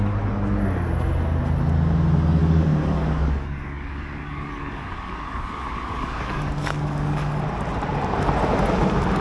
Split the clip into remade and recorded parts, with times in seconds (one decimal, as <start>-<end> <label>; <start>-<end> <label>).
0.0-2.4 recorded; 2.4-7.4 remade; 7.4-9.2 recorded